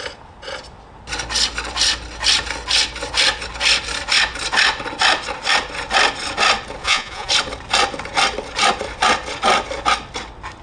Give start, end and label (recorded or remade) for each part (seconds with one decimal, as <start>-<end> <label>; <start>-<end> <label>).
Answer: 0.0-6.8 recorded; 6.8-7.3 remade; 7.3-10.6 recorded